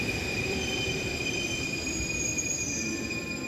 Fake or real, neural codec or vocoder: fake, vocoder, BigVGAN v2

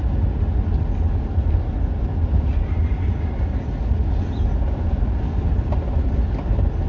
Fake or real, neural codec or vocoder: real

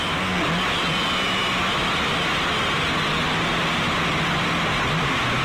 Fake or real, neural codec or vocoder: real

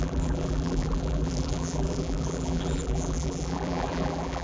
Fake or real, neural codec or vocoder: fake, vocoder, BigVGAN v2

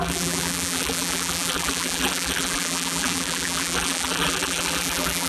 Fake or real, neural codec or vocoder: fake, vocoder, BigVGAN v2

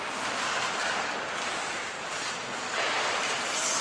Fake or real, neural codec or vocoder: real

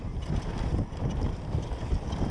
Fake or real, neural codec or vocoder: fake, vocoder, BigVGAN v2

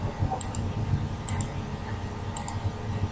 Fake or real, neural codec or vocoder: real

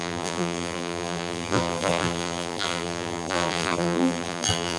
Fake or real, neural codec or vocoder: fake, vocoder, BigVGAN v2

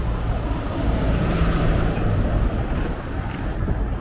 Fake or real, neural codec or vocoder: fake, vocoder, BigVGAN v2